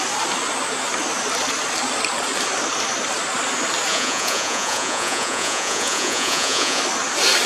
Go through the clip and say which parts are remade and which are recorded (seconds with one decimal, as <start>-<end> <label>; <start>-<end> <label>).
0.0-3.9 recorded; 3.9-6.8 remade; 6.8-7.5 recorded